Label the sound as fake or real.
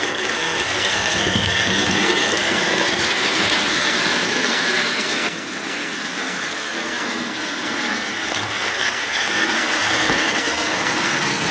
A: fake